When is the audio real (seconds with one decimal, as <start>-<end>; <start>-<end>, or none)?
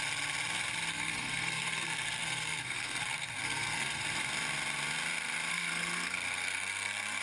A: 0.0-0.9; 4.0-5.5